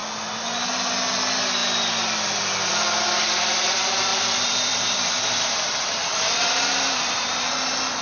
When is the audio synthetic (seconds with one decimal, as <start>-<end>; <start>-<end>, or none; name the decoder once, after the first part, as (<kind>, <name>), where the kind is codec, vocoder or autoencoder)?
4.1-7.2 (vocoder, BigVGAN v2)